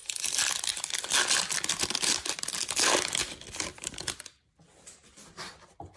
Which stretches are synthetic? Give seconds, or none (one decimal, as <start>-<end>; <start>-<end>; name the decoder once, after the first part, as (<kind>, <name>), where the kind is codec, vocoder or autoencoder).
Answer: none